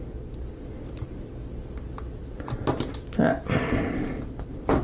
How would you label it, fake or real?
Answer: real